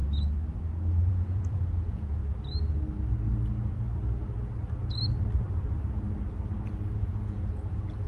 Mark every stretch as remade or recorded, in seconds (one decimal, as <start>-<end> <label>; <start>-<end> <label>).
0.0-1.1 recorded; 1.1-2.2 remade; 2.2-6.9 recorded; 6.9-8.1 remade